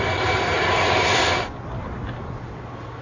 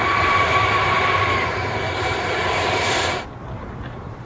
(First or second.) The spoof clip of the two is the second